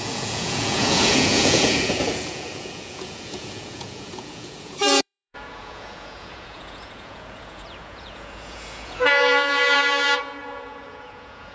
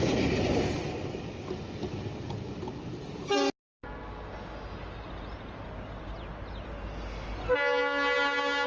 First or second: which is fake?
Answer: first